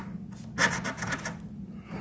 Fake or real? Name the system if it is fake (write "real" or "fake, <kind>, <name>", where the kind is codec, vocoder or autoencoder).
real